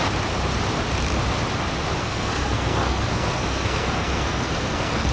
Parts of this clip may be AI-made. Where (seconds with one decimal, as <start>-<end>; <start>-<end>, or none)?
2.0-5.1